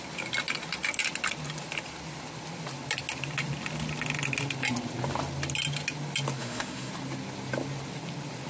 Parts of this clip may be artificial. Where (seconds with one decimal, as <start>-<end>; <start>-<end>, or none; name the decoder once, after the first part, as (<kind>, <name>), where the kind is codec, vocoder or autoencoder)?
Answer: 6.4-6.9 (autoencoder, DAC-VAE)

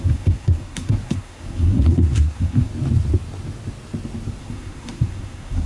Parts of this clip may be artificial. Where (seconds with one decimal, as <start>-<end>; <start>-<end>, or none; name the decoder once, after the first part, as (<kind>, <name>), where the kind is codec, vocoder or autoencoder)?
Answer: 0.0-2.7 (codec, SNAC); 4.4-5.7